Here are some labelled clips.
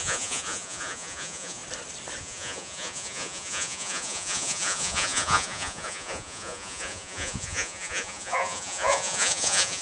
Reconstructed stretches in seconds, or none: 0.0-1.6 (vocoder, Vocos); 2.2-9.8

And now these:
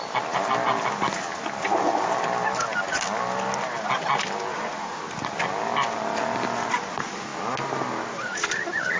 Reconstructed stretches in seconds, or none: 4.5-5.0 (vocoder, Vocos)

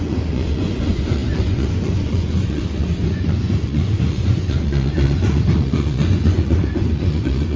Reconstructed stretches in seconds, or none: 0.0-7.6 (vocoder, Vocos)

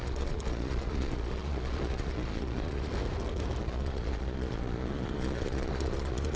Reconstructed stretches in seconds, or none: 0.0-2.9 (vocoder, Vocos); 3.6-6.4

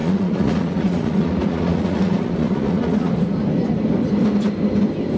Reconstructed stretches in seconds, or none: 0.0-3.1 (vocoder, Vocos)

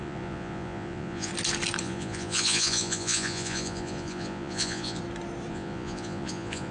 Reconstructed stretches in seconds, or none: 0.0-1.3 (vocoder, Vocos); 1.8-5.0; 5.5-6.7

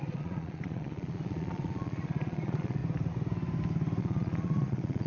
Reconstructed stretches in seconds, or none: 0.0-2.8 (vocoder, Vocos); 4.0-5.1